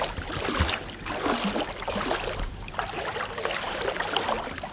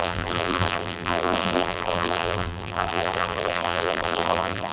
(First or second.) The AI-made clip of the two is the second